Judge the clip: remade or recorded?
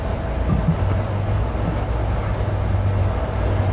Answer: recorded